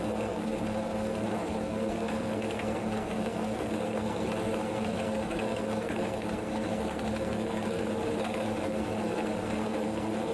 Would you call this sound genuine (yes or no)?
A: no